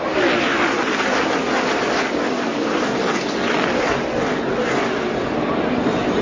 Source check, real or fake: real